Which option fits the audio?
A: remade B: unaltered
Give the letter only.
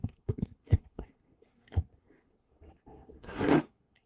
A